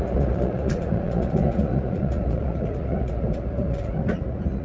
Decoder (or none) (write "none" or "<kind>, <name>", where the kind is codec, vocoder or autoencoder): vocoder, Vocos